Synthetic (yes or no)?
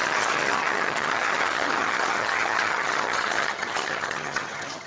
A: yes